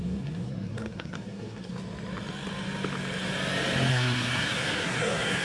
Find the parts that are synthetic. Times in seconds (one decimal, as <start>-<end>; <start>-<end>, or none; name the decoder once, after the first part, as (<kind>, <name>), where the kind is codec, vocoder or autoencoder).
0.0-1.8 (codec, SNAC); 3.9-5.4